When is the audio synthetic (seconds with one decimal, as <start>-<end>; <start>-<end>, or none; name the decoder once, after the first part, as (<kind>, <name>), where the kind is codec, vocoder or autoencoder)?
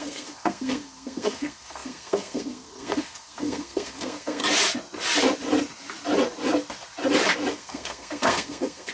0.0-4.4 (codec, SNAC); 7.5-8.9